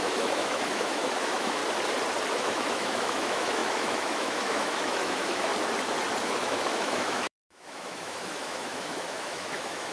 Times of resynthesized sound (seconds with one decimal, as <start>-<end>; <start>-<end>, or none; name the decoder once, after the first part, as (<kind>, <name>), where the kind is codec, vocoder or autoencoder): 0.0-1.6 (autoencoder, DAC-VAE); 2.3-5.5; 6.2-9.9